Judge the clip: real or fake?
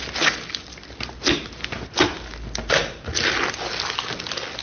real